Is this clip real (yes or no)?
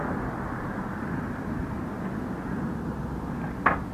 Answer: yes